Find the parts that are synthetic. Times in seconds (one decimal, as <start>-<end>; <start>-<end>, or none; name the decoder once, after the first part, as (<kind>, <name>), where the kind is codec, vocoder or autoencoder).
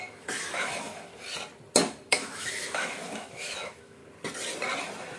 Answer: 0.0-1.1 (autoencoder, DAC-VAE); 2.1-4.0